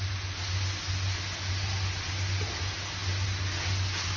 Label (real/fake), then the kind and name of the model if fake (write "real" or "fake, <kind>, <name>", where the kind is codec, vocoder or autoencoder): real